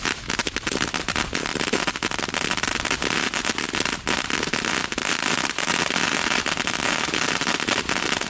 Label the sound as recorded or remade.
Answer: recorded